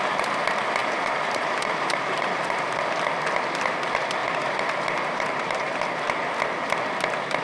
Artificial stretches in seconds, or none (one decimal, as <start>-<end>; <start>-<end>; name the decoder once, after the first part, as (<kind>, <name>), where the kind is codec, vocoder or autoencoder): 0.8-2.8 (vocoder, BigVGAN v2); 4.2-6.0